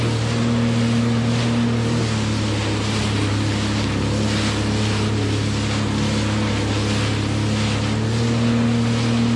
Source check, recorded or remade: recorded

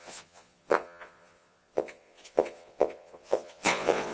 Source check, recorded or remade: remade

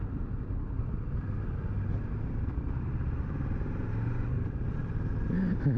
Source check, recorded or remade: recorded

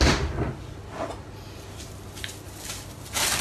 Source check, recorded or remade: recorded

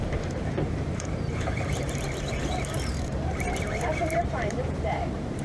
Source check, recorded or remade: remade